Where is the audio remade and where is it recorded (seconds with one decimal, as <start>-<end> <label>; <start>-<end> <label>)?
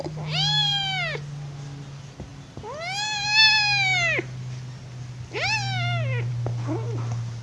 0.0-7.4 recorded